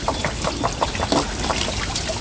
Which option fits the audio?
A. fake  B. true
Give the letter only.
A